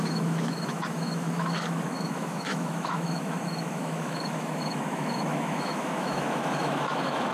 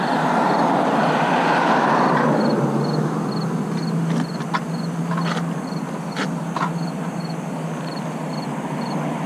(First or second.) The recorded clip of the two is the second